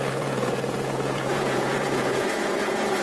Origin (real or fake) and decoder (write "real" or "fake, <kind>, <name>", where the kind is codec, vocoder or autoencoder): fake, vocoder, Vocos